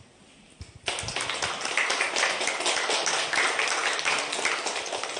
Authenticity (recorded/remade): recorded